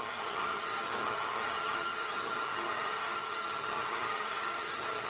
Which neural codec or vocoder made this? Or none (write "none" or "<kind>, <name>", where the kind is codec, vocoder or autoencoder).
vocoder, HiFi-GAN